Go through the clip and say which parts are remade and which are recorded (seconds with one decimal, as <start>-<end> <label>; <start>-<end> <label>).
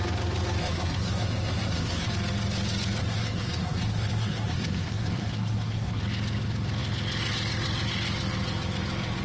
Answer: 0.0-0.6 recorded; 0.6-2.1 remade; 2.1-3.0 recorded; 3.0-6.0 remade; 6.0-9.2 recorded